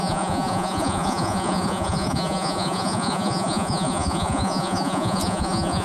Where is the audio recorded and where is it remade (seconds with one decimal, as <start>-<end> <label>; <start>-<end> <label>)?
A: 0.0-5.8 remade